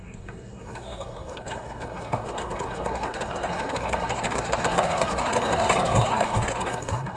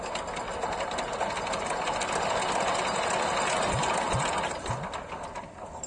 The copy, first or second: first